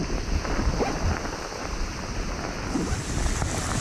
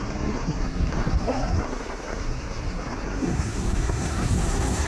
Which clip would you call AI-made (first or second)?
second